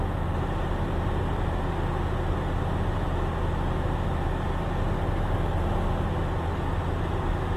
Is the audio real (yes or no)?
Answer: yes